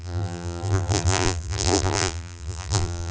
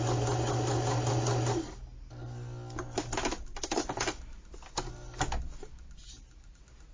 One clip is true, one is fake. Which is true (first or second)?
second